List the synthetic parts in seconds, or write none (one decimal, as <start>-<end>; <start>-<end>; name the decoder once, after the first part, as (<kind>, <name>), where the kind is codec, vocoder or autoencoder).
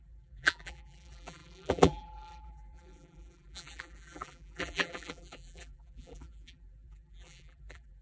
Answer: 0.0-8.0 (vocoder, BigVGAN v2)